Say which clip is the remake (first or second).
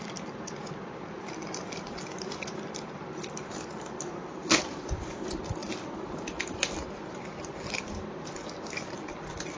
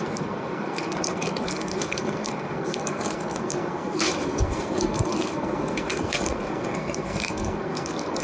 second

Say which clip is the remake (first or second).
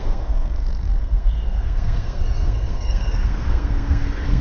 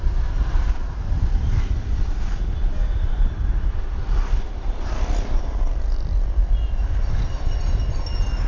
first